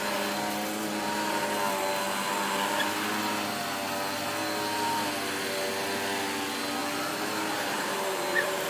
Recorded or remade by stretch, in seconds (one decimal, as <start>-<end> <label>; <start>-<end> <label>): 0.0-6.8 recorded; 6.8-8.7 remade